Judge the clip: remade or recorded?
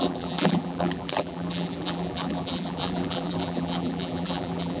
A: remade